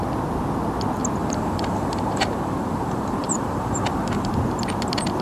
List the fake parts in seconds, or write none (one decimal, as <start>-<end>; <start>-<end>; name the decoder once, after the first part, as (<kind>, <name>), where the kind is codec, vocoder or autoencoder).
1.2-4.3 (vocoder, BigVGAN v2)